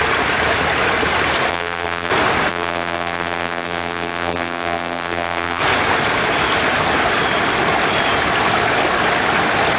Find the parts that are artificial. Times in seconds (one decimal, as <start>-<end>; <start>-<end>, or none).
1.5-2.1; 2.5-5.6

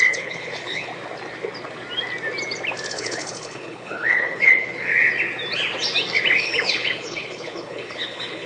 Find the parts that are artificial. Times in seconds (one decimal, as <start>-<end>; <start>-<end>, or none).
0.0-0.9; 2.9-4.9; 6.4-8.5

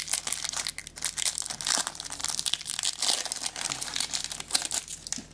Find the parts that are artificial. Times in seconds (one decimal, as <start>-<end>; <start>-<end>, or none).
none

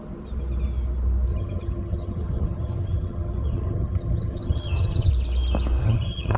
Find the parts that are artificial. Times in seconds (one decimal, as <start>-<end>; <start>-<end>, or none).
1.3-5.1; 5.8-6.4

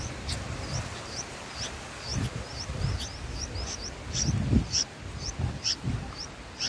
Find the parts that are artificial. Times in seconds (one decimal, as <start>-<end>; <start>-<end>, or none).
none